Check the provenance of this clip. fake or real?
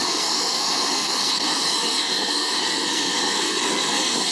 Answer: fake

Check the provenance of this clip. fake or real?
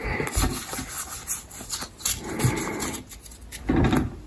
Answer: real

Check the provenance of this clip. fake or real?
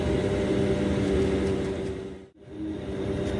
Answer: real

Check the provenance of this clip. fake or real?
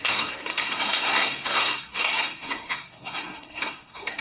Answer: fake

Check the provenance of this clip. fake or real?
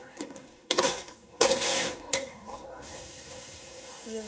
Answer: fake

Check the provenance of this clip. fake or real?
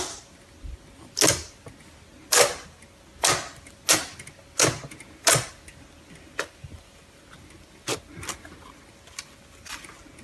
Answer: real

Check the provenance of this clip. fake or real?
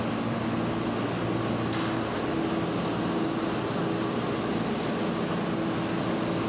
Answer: real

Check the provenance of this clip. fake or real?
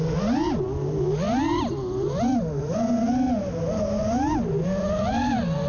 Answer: real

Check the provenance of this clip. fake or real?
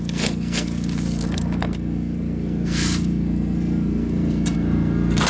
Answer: fake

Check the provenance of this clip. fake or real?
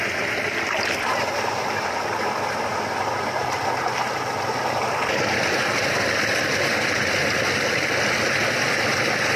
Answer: real